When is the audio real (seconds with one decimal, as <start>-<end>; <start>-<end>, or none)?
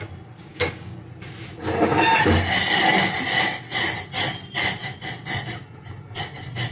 0.0-0.5; 1.0-6.7